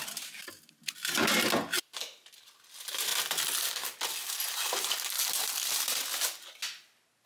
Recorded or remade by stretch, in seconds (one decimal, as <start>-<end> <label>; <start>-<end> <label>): 0.0-7.3 recorded